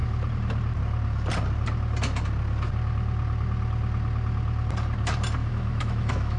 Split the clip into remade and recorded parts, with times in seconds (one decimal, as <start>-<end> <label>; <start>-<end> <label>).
0.0-5.4 recorded; 5.4-6.4 remade